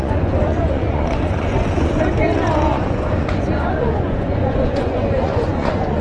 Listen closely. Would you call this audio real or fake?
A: fake